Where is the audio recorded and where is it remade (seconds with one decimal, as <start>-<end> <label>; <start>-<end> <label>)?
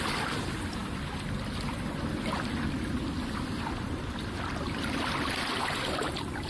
0.0-6.5 recorded